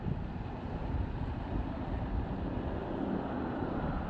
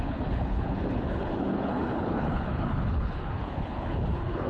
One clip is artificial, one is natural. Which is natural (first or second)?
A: first